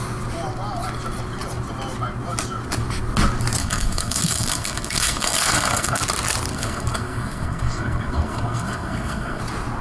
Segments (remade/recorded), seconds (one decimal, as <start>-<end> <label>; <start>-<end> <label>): 0.0-3.6 recorded; 3.6-6.0 remade; 6.0-6.5 recorded; 6.5-9.4 remade; 9.4-9.8 recorded